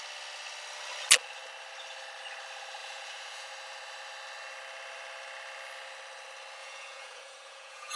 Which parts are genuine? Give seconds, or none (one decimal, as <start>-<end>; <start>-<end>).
0.0-2.8; 3.5-6.6